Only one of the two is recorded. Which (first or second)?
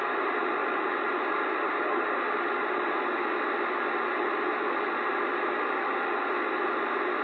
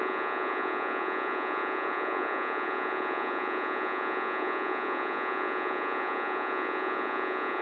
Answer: first